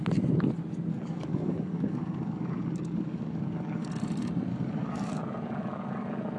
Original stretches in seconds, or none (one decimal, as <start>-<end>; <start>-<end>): 0.0-0.9; 3.9-4.5; 5.2-6.4

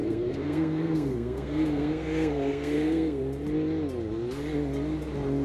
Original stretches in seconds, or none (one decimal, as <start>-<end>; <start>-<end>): 3.2-5.4

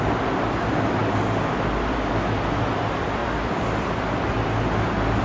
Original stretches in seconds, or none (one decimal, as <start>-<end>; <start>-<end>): 0.0-1.0; 2.1-3.2